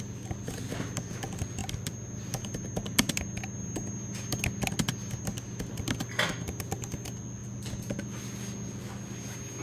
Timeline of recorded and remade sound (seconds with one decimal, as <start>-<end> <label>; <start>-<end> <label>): 0.0-9.6 recorded